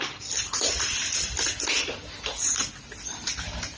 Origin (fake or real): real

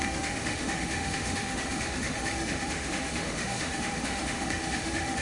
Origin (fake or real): fake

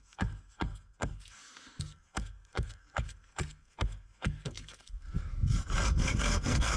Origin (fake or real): fake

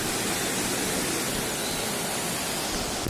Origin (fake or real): real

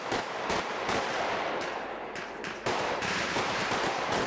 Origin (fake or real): fake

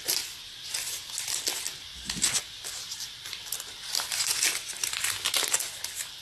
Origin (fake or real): real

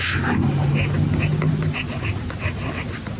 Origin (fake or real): real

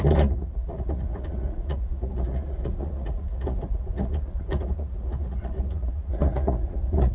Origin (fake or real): fake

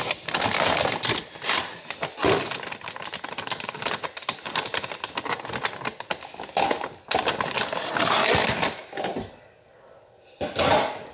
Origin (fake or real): real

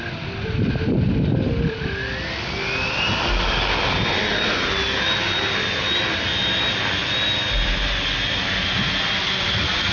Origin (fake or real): real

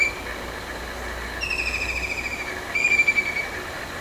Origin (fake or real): real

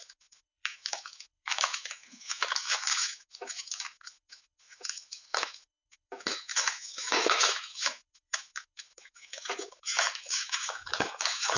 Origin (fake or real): fake